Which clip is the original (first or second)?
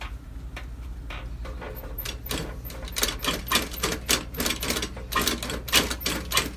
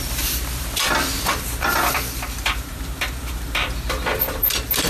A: first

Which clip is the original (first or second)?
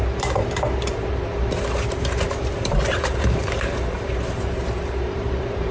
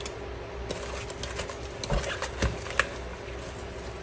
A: second